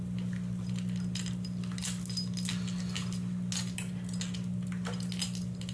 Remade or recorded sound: recorded